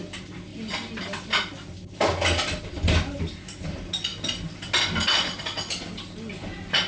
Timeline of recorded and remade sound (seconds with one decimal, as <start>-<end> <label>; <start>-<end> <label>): 0.0-6.9 recorded